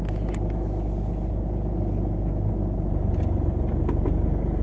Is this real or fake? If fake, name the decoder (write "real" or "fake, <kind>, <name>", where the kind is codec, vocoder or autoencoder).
real